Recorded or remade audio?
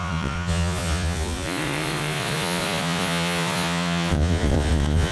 remade